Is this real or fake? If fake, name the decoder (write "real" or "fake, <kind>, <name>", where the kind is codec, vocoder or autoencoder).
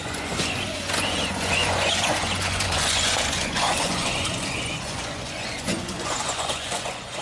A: fake, vocoder, Vocos